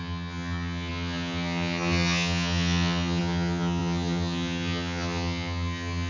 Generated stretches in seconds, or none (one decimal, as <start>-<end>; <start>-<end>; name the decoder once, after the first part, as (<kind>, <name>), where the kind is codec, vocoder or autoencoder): 0.0-6.1 (vocoder, HiFi-GAN)

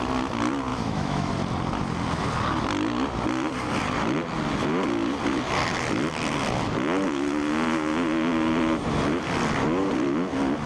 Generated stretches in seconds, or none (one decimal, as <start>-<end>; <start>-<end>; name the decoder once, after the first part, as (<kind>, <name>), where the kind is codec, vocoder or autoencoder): 0.7-1.3 (autoencoder, DAC-VAE)

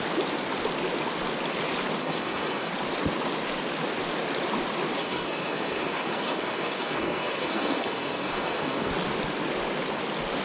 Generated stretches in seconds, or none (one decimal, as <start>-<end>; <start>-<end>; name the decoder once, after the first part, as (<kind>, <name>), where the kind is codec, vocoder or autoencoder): 2.0-2.7 (codec, SNAC); 5.0-8.9

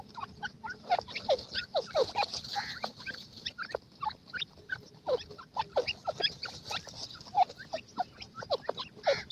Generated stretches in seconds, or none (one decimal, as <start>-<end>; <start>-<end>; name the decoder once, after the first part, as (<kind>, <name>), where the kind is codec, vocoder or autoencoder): none

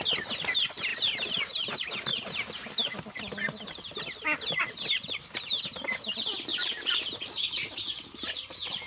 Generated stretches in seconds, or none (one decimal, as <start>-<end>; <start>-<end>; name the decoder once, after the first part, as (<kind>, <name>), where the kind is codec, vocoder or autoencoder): 6.5-8.4 (vocoder, BigVGAN v2)

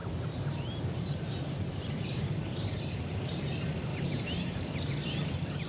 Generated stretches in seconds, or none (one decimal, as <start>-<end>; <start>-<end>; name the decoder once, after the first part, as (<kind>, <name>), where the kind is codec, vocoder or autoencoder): 0.0-3.4 (vocoder, BigVGAN v2); 3.9-4.5

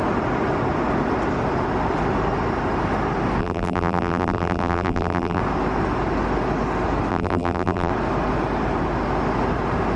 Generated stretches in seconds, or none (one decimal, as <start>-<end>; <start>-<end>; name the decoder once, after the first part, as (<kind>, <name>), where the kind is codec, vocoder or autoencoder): 3.4-5.4 (vocoder, BigVGAN v2); 7.1-7.9